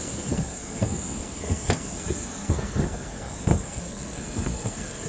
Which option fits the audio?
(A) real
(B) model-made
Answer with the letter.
B